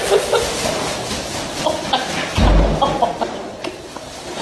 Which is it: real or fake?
real